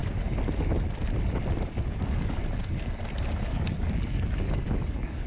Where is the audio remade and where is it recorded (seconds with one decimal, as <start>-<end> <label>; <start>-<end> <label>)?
0.0-1.6 recorded; 1.6-2.4 remade; 2.4-3.3 recorded; 3.3-5.3 remade